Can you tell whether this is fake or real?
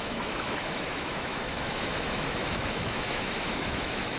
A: fake